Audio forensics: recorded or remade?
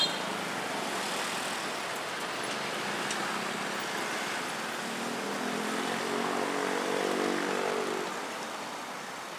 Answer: recorded